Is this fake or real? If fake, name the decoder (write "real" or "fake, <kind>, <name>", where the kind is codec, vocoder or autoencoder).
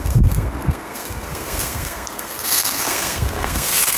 fake, codec, SNAC